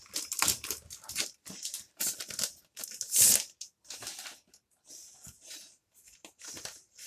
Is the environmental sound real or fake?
real